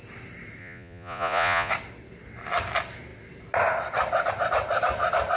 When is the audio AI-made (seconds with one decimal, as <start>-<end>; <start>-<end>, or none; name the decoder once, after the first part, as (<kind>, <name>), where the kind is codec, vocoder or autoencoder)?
0.6-1.7 (vocoder, Vocos)